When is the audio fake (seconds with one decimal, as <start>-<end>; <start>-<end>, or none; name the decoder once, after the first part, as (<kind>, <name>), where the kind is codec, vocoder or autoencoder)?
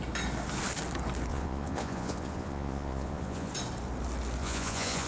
1.3-3.5 (vocoder, Vocos); 4.4-5.1